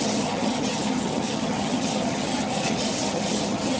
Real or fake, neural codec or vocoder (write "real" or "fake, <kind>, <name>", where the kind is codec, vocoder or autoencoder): fake, vocoder, HiFi-GAN